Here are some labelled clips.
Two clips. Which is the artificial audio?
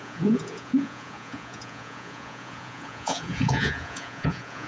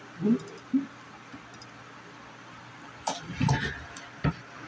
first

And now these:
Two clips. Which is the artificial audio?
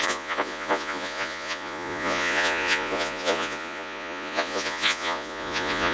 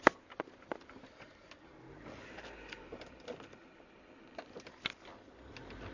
first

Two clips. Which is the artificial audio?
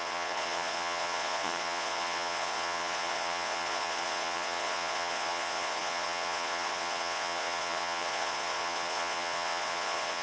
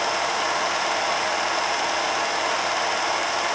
first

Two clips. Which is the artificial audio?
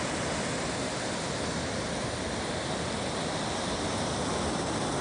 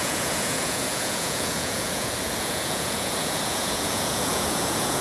second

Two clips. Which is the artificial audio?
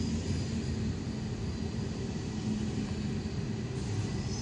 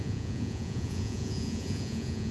second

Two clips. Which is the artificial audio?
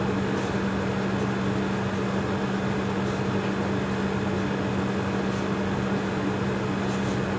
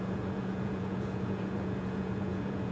second